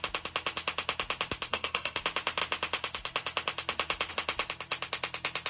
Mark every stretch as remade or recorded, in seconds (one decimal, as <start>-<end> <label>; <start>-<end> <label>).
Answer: 0.0-1.5 recorded; 1.5-2.0 remade; 2.0-5.5 recorded